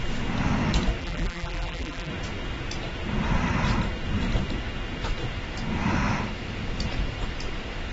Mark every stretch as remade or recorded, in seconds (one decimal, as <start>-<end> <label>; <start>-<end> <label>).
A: 0.0-1.0 recorded; 1.0-2.1 remade; 2.1-7.9 recorded